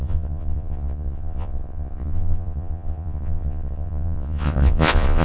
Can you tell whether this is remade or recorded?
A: remade